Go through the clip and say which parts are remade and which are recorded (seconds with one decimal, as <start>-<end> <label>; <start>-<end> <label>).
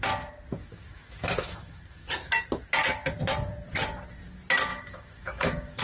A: 0.0-0.6 recorded; 0.6-2.1 remade; 2.1-4.7 recorded; 4.7-5.8 remade